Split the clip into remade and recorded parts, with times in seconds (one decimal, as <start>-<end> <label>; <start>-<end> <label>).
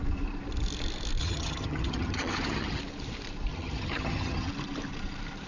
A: 0.0-1.2 recorded; 1.2-2.8 remade; 2.8-3.5 recorded; 3.5-4.5 remade; 4.5-5.5 recorded